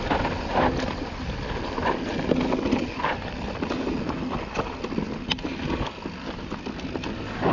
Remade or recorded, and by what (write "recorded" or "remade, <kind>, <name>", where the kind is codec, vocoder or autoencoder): recorded